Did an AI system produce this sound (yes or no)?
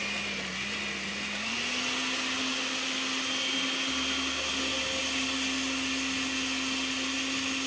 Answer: no